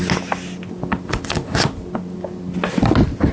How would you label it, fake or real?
real